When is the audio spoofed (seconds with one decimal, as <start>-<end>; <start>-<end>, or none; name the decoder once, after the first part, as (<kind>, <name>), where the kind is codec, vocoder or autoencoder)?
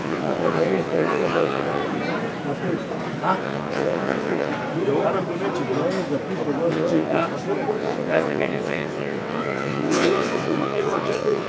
0.0-1.8 (vocoder, WaveNeXt); 3.4-4.5; 6.7-7.2; 7.7-11.5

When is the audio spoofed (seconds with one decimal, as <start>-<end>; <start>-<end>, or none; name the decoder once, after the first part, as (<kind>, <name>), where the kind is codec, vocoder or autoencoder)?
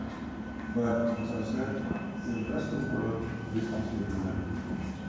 none